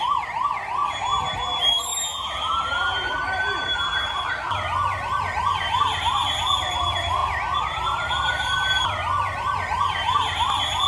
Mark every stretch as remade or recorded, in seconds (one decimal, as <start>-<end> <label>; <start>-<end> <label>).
0.0-10.9 recorded